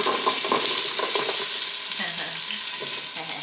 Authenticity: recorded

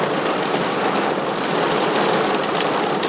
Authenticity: recorded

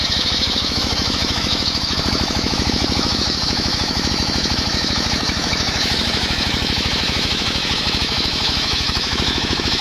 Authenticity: remade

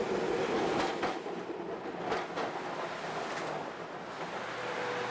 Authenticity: recorded